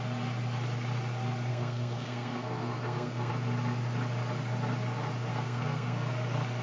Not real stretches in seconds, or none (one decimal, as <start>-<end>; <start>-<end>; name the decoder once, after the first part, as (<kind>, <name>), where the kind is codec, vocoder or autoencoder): 1.5-3.3 (codec, SNAC); 5.3-6.1